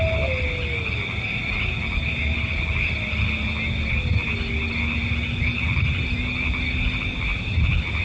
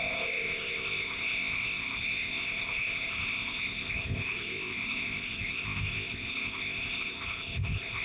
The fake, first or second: second